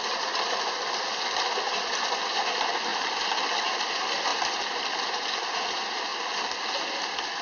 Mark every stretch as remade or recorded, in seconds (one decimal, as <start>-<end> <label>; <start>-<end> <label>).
0.0-7.4 recorded